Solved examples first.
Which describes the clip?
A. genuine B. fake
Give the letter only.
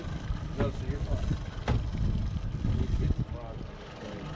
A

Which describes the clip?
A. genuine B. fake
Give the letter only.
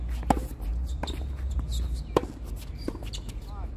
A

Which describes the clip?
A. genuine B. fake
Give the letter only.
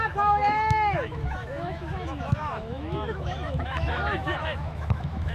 B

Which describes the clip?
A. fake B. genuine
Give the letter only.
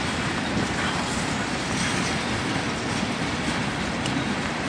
B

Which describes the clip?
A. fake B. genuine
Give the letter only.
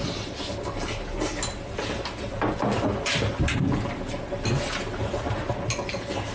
B